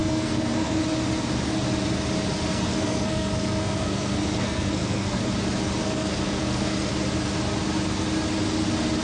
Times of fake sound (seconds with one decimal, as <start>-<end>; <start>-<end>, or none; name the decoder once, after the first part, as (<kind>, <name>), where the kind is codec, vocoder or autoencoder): 0.0-0.8 (codec, SNAC); 2.5-5.2; 5.8-6.9